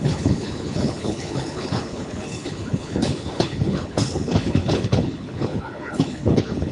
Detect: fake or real fake